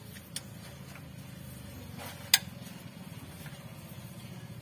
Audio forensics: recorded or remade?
recorded